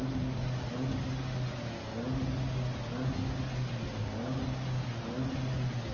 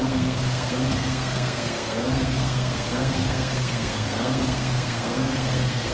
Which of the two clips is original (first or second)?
first